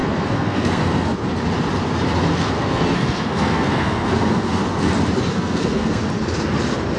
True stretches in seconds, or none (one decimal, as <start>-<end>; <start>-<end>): 1.2-2.3; 4.6-5.3; 6.0-7.0